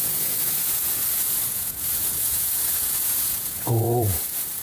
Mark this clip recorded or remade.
remade